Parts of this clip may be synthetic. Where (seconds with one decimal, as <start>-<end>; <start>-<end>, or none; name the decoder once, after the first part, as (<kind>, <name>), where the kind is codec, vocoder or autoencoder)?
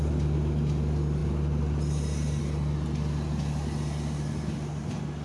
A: none